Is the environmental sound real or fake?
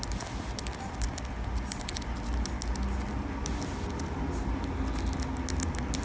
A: real